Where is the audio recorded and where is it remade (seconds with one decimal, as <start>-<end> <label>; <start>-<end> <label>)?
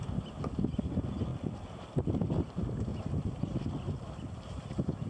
0.0-2.9 recorded; 2.9-4.1 remade; 4.1-5.1 recorded